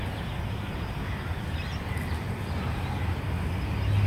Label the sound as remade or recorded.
recorded